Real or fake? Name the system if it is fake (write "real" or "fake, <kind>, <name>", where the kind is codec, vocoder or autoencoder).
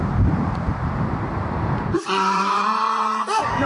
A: fake, vocoder, BigVGAN v2